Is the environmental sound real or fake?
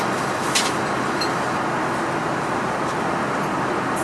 real